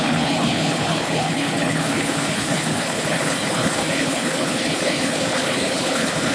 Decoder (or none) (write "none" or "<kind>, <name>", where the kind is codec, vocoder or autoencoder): codec, HILCodec